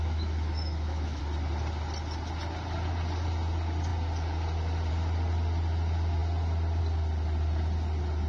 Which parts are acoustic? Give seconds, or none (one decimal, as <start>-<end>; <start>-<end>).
1.2-8.3

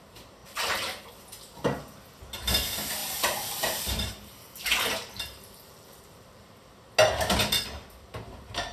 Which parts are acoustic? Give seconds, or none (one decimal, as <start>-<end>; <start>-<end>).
0.0-0.4; 1.1-3.0; 6.7-8.7

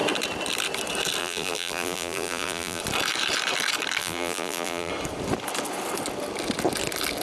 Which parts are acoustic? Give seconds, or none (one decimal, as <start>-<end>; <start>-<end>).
0.0-1.2; 2.8-4.0; 4.9-7.2